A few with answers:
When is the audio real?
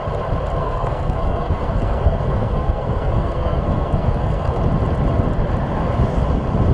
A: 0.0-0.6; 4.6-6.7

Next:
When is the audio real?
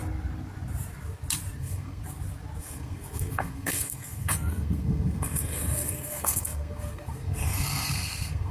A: 0.0-1.6; 2.0-2.6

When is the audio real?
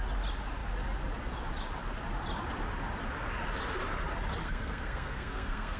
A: 0.0-4.4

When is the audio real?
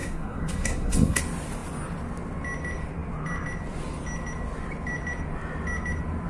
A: 1.2-6.3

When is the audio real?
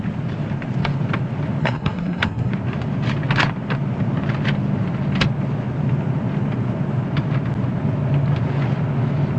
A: 0.0-1.6; 2.5-9.4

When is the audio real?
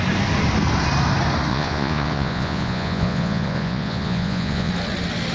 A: 0.0-1.5; 4.7-5.3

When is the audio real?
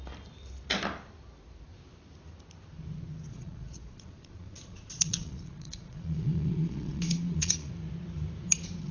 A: 0.0-3.3; 7.7-8.9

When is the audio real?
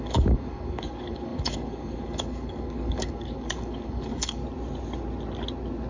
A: 4.4-5.9